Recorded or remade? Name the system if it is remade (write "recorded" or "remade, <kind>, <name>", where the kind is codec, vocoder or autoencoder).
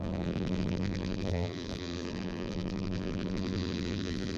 remade, vocoder, BigVGAN v2